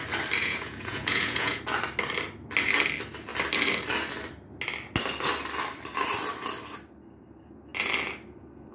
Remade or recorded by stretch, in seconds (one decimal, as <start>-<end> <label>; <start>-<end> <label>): 0.0-0.4 recorded; 0.4-1.6 remade; 1.6-8.7 recorded